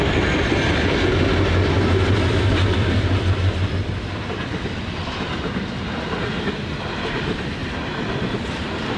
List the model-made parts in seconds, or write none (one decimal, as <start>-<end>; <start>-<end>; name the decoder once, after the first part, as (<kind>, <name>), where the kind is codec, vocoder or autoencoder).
0.0-7.6 (vocoder, BigVGAN v2); 8.4-9.0